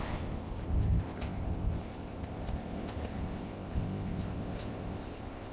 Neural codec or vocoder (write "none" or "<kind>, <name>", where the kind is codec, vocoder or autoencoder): codec, ZipCodec